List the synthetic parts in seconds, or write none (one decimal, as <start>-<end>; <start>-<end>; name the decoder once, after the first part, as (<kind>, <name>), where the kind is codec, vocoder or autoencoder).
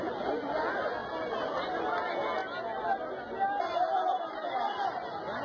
none